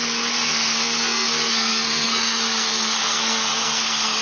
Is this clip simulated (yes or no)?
yes